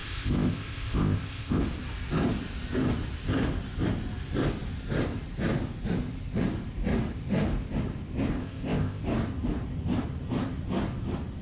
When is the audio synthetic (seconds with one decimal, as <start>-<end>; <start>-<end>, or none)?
0.0-1.6; 8.4-9.0